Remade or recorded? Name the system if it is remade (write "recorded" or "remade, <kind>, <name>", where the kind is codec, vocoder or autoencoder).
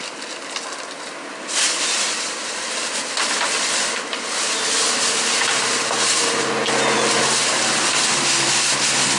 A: recorded